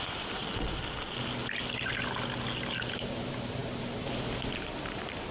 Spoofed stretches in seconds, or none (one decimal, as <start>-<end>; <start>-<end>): 0.0-0.4; 2.9-5.3